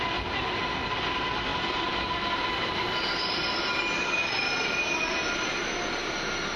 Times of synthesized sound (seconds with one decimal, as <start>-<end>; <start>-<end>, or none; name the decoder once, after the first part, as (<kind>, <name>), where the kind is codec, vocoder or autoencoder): none